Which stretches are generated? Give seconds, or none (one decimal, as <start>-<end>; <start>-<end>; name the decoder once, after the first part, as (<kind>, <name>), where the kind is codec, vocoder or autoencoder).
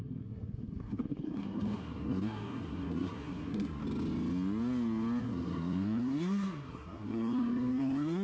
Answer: 0.0-3.8 (codec, SNAC); 5.2-8.2